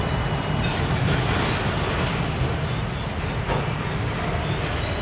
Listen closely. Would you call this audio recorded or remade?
recorded